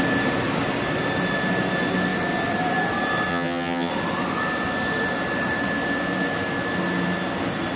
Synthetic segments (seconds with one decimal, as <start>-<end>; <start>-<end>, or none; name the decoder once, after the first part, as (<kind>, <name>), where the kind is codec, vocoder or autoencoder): 3.3-3.9 (vocoder, HiFi-GAN)